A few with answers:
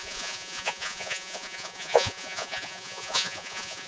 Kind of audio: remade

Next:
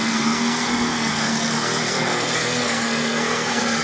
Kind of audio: remade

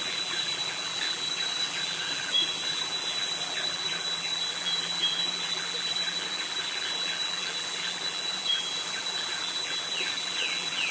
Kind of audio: remade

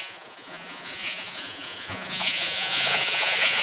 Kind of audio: remade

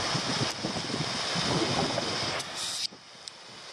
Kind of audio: recorded